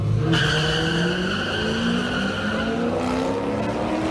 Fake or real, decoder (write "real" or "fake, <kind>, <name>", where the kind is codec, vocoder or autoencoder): real